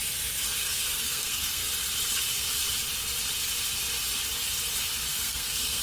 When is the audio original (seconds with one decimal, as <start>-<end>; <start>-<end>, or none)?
0.0-0.6; 1.7-5.1

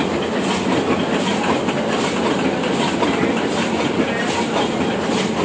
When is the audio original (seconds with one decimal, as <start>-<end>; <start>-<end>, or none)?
0.0-5.4

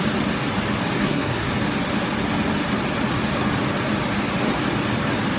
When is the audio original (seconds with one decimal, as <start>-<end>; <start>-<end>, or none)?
0.0-1.0; 1.5-5.4